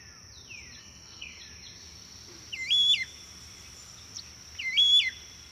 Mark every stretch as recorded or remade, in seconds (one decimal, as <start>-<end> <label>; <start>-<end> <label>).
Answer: 0.0-0.8 recorded; 0.8-1.4 remade; 1.4-5.5 recorded